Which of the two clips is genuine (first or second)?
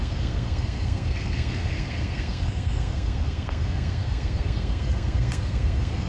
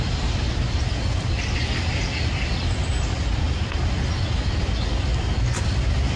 second